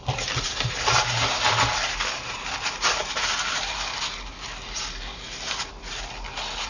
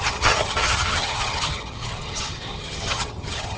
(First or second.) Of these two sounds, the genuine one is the first